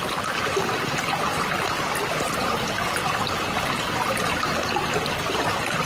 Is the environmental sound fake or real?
real